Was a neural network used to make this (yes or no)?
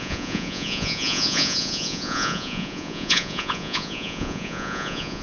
yes